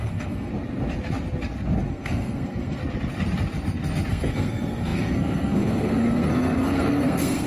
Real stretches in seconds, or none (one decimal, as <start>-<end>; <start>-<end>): 0.5-1.9; 2.8-4.1